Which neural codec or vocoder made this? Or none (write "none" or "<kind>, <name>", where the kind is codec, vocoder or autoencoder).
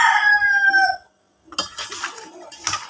none